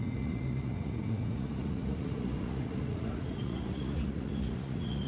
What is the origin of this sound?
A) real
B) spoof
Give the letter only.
B